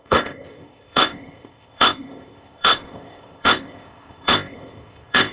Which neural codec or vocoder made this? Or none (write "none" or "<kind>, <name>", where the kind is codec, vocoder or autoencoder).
codec, ZipCodec